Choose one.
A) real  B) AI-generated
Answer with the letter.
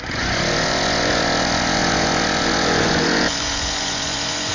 B